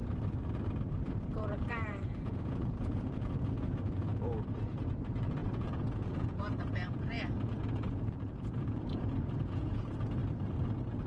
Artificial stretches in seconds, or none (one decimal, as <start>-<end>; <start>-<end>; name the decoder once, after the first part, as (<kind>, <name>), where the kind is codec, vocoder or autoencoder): 0.9-10.2 (vocoder, Vocos)